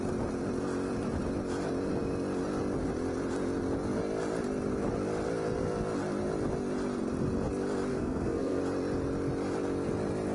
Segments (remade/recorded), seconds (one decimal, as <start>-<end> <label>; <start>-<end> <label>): 0.0-7.9 recorded; 7.9-8.6 remade; 8.6-10.3 recorded